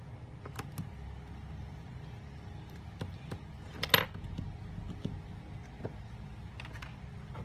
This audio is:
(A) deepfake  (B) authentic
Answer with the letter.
B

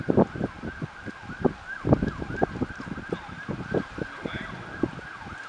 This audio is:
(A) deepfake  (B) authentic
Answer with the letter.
B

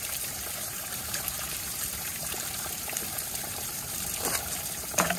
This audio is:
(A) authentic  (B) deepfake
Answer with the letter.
B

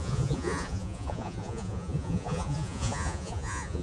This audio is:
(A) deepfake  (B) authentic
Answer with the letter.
A